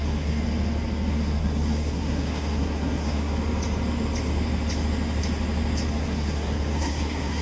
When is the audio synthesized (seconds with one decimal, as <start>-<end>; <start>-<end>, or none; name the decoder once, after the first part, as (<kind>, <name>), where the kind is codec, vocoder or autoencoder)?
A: 0.0-0.4 (codec, SNAC); 1.1-3.3; 5.9-7.4